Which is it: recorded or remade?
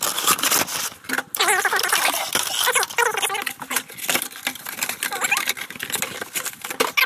recorded